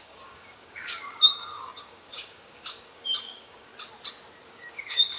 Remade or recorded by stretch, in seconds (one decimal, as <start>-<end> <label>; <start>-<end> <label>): 0.0-3.7 remade; 3.7-4.5 recorded; 4.5-5.2 remade